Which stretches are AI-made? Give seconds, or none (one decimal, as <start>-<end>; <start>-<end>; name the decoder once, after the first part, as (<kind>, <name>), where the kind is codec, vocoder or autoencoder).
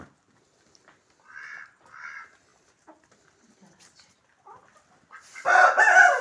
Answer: none